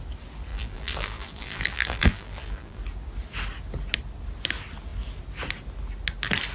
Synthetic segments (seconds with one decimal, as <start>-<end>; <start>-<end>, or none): 0.5-2.8